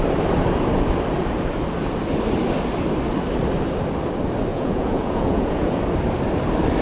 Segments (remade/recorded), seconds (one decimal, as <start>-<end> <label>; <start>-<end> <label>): 0.0-4.5 recorded; 4.5-5.8 remade; 5.8-6.8 recorded